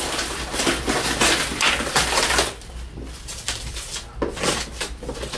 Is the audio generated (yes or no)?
no